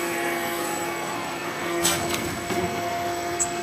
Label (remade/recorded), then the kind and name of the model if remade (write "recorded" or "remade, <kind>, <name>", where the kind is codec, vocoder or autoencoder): remade, codec, SNAC